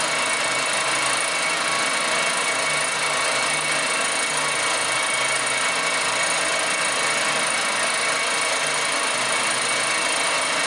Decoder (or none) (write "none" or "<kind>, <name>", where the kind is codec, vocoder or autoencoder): none